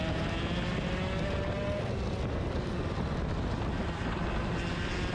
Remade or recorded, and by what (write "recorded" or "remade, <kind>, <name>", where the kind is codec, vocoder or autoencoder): recorded